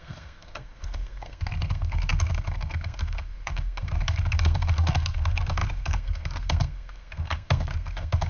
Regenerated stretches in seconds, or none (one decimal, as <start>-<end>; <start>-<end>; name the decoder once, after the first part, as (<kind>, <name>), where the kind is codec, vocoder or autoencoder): 0.0-8.3 (codec, SNAC)